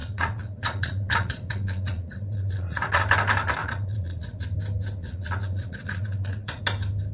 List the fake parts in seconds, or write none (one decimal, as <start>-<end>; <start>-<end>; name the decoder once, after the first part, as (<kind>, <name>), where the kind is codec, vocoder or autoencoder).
0.0-3.0 (vocoder, Vocos); 3.6-4.4; 5.0-6.6